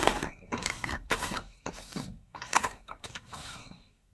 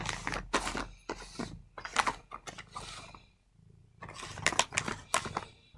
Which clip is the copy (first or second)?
first